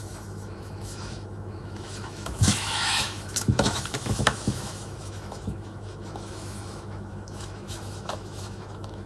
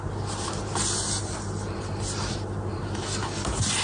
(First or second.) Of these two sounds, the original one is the second